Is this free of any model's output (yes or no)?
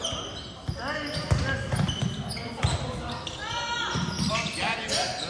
yes